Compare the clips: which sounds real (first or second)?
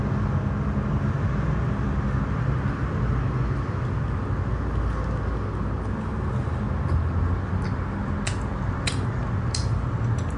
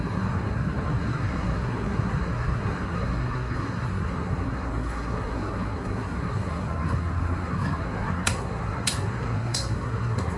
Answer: first